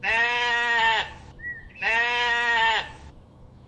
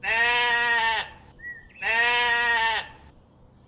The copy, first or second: first